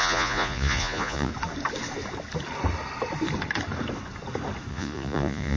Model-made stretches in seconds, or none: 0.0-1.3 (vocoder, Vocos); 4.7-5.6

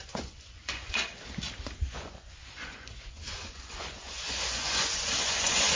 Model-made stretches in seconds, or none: 0.0-1.2 (vocoder, Vocos); 1.9-5.8

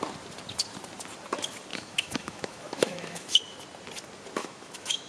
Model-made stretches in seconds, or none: 1.7-3.4 (autoencoder, DAC-VAE); 4.4-5.1

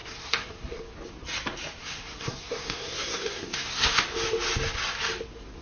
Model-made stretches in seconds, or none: 0.0-0.8 (codec, SNAC); 1.8-4.0

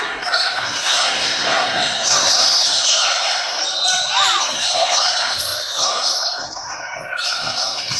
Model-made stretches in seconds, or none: 0.0-3.6 (codec, SNAC); 4.4-8.0